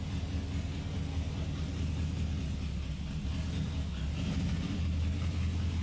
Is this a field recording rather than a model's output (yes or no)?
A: yes